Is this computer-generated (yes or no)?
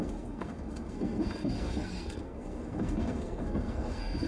yes